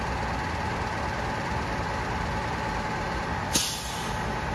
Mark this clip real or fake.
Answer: real